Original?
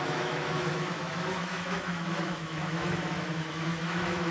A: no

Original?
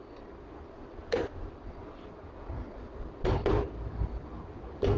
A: yes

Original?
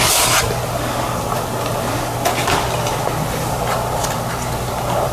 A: yes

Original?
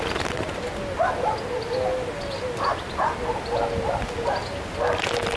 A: yes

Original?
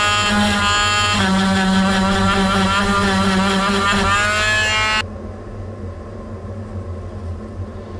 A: yes